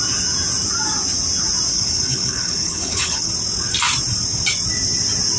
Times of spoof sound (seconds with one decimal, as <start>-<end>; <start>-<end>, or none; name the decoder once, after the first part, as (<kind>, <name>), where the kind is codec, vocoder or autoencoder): 1.7-3.3 (codec, HILCodec)